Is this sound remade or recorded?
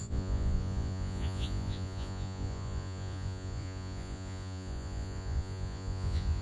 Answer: remade